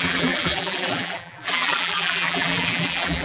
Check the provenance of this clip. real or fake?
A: fake